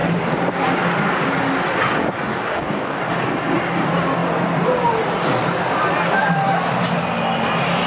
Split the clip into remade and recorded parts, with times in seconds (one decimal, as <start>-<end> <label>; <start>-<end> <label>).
0.0-2.3 recorded; 2.3-3.0 remade; 3.0-7.9 recorded